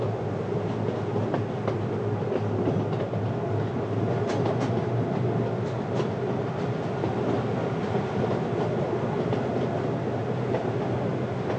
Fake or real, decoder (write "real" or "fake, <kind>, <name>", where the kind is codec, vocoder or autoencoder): real